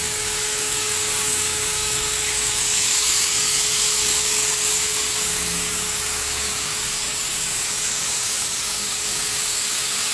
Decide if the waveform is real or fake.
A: fake